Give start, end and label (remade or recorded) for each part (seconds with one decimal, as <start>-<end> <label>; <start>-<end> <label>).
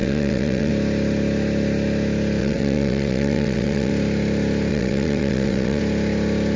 0.0-0.7 remade; 0.7-2.4 recorded; 2.4-3.9 remade; 3.9-4.7 recorded; 4.7-5.8 remade; 5.8-6.6 recorded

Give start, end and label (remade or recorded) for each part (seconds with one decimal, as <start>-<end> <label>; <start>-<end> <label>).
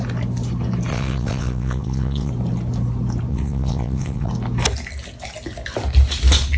0.0-0.9 recorded; 0.9-2.3 remade; 2.3-3.3 recorded; 3.3-4.3 remade; 4.3-6.6 recorded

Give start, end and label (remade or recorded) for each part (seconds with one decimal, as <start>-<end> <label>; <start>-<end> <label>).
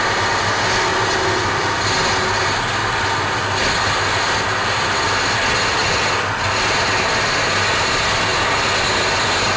0.0-9.6 recorded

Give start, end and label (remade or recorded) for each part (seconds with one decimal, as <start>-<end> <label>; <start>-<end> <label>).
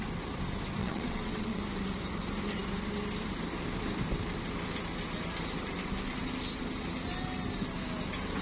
0.0-0.8 recorded; 0.8-1.6 remade; 1.6-8.4 recorded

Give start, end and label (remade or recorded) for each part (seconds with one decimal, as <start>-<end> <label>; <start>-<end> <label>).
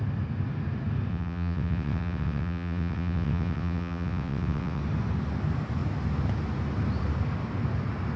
0.0-1.1 recorded; 1.1-4.8 remade; 4.8-8.2 recorded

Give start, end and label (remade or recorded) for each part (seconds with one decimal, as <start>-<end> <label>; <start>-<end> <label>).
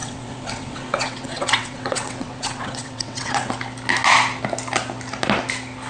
0.0-3.5 remade; 3.5-5.9 recorded